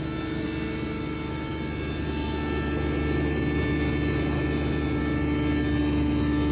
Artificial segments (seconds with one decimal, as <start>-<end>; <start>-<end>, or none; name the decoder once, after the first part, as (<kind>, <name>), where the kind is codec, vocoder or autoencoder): none